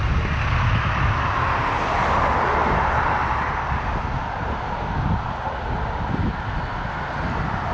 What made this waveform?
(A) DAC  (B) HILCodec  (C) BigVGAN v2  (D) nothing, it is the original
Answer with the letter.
D